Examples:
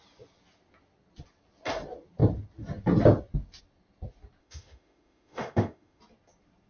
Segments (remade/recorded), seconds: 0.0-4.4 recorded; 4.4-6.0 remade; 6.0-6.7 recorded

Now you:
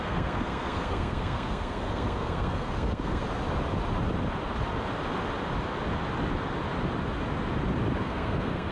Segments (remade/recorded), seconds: 0.0-3.2 remade; 3.2-8.0 recorded; 8.0-8.7 remade

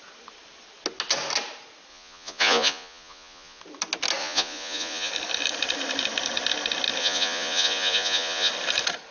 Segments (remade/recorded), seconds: 0.0-1.9 recorded; 1.9-3.6 remade; 3.6-4.2 recorded; 4.2-5.1 remade; 5.1-7.0 recorded; 7.0-8.5 remade; 8.5-9.1 recorded

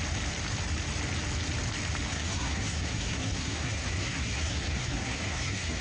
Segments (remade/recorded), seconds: 0.0-2.1 recorded; 2.1-5.8 remade